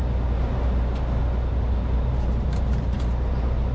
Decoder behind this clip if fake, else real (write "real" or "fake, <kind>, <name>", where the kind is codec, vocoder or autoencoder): real